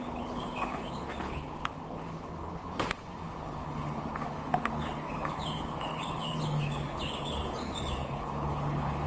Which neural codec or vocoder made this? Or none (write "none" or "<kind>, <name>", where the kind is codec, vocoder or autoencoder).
codec, HILCodec